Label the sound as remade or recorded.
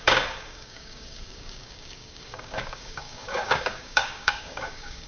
remade